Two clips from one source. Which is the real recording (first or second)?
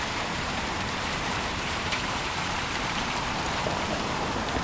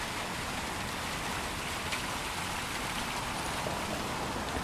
second